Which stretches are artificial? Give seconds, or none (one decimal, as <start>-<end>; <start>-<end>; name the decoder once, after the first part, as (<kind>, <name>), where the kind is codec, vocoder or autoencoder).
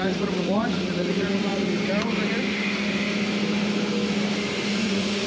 0.0-1.5 (vocoder, Vocos); 4.7-5.3